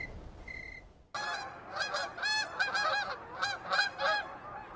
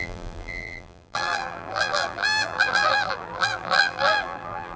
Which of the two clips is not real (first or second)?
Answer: second